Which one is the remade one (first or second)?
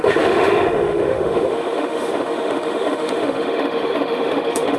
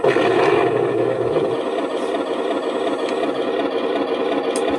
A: first